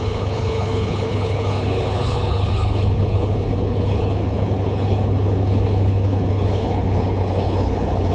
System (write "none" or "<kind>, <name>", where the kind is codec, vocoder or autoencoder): codec, HILCodec